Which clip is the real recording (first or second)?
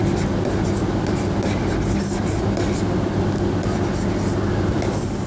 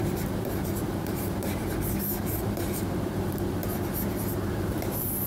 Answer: first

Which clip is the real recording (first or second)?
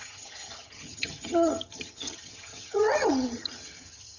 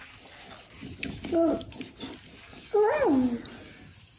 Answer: second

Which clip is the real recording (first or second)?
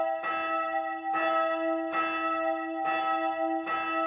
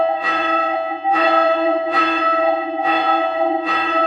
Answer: first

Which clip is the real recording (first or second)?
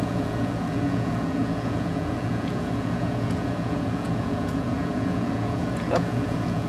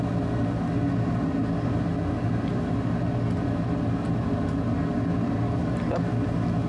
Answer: second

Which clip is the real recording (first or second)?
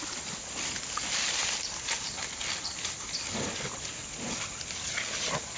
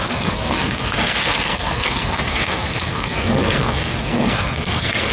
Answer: first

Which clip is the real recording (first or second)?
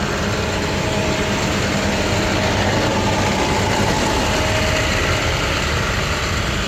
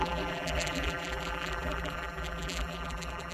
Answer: first